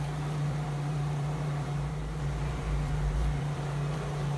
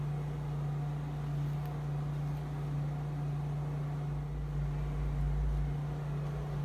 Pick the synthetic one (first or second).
first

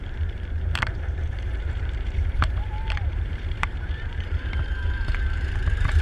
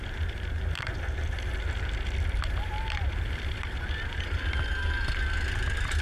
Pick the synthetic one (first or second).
first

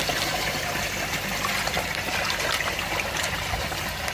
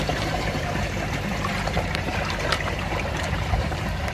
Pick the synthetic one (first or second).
second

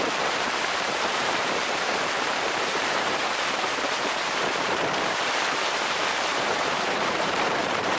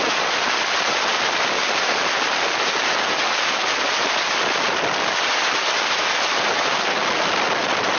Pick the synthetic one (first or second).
first